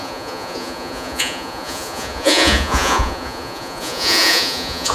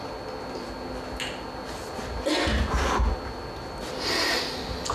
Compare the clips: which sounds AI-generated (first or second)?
first